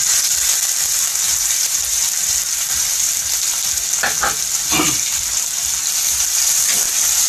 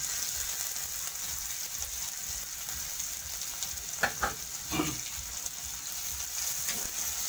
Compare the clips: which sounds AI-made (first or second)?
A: first